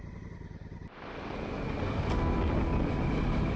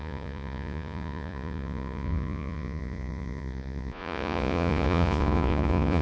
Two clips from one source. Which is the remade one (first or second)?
second